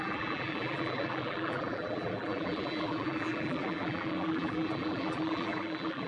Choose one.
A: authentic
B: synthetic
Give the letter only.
B